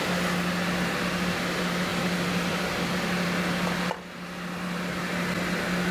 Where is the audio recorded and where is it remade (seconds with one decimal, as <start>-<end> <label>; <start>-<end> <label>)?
0.0-5.9 recorded